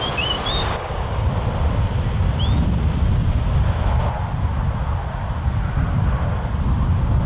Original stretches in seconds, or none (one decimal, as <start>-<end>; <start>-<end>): 0.0-0.6; 1.3-7.3